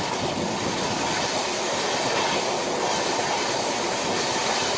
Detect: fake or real real